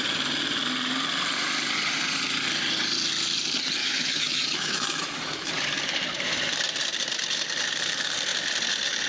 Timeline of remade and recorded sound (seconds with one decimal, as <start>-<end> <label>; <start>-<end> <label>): 0.0-3.8 recorded; 3.8-5.5 remade; 5.5-9.1 recorded